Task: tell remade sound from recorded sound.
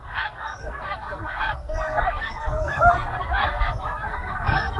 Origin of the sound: remade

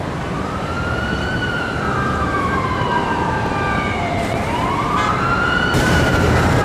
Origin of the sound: remade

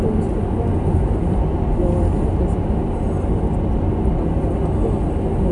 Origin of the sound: recorded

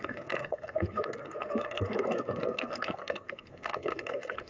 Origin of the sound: remade